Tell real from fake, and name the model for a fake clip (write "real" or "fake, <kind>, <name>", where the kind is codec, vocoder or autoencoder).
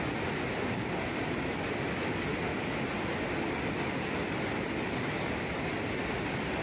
real